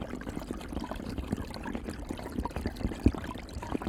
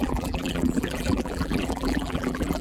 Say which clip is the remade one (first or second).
second